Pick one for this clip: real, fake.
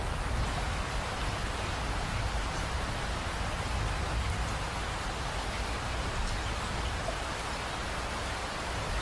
real